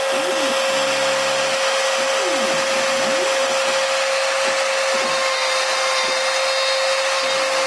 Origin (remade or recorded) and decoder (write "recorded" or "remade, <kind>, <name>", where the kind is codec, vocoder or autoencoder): recorded